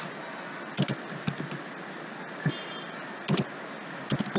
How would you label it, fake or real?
real